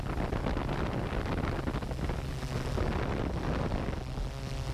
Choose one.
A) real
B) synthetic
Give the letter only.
A